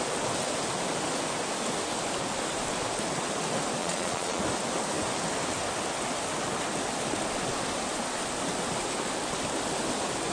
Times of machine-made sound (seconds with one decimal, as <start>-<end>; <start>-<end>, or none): 3.8-4.4